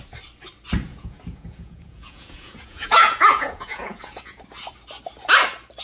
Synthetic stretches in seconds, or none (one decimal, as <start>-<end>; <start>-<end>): 0.9-4.4